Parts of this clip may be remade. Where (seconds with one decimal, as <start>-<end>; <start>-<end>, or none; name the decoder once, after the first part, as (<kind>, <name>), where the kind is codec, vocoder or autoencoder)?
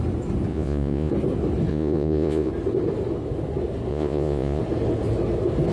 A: 0.5-1.1 (vocoder, Vocos); 1.7-2.5; 3.9-4.6